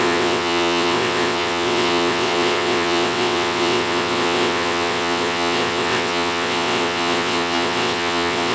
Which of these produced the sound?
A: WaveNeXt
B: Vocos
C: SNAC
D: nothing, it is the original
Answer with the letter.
A